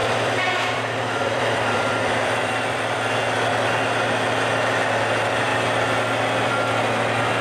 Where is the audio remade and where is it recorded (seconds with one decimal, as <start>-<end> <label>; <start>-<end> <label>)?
0.0-3.1 remade; 3.1-7.4 recorded